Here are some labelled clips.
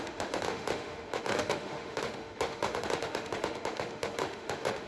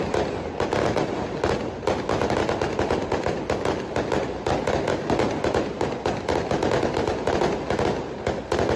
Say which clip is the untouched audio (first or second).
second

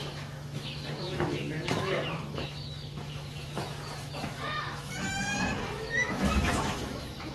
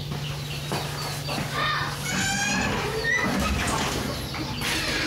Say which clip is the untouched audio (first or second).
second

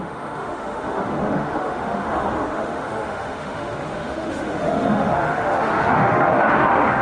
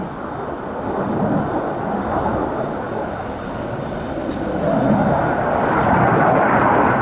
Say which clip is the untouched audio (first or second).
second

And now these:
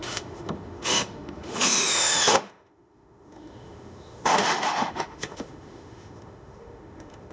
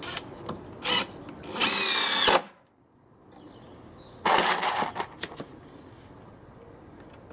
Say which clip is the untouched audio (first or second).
second